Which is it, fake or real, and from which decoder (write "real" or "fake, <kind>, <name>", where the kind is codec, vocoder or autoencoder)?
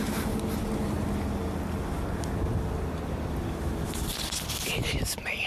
real